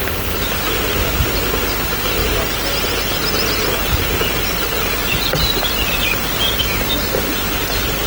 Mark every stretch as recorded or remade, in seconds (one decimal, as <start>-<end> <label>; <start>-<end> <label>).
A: 0.0-2.2 recorded; 2.2-6.6 remade; 6.6-8.1 recorded